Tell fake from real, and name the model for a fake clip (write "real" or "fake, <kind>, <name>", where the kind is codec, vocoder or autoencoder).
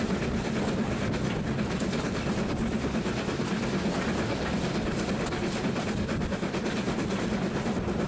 real